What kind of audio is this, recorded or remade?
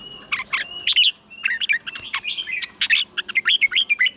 recorded